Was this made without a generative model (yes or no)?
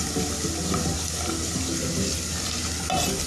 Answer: yes